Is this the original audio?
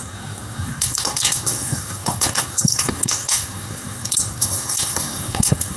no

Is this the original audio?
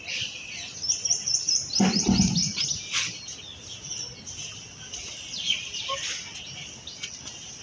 yes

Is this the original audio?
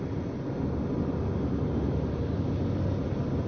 yes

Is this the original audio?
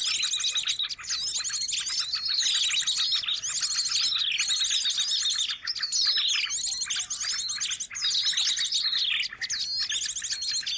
yes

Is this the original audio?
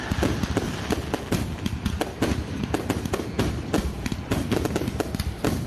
yes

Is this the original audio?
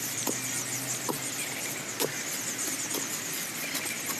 yes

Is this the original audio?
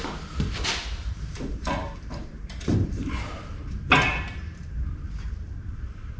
no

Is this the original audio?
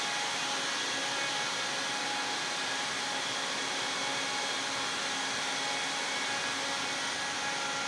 yes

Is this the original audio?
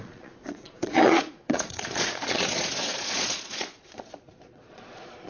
no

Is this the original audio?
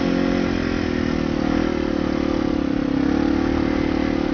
yes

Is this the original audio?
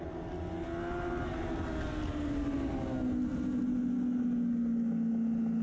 yes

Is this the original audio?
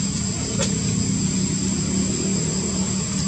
yes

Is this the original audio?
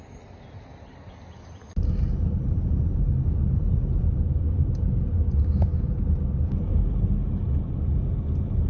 yes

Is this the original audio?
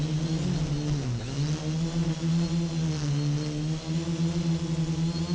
yes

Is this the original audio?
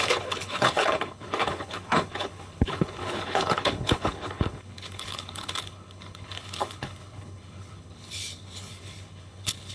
no